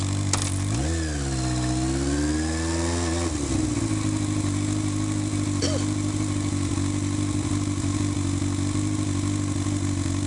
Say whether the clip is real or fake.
real